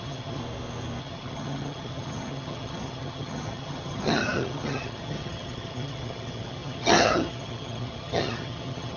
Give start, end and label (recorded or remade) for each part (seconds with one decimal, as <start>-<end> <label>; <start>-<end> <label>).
0.0-0.4 remade; 0.4-1.0 recorded; 1.0-9.0 remade